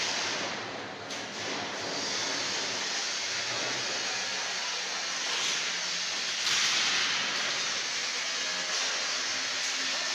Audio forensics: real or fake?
real